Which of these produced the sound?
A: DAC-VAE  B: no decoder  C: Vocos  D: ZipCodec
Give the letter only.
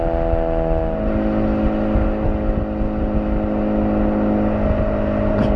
B